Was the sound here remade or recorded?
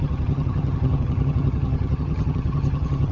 remade